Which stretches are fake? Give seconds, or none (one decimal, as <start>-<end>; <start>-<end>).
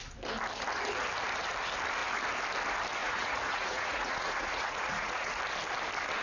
3.0-5.3